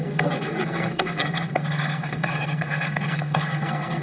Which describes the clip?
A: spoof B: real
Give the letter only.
A